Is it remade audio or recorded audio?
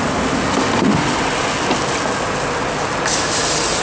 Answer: recorded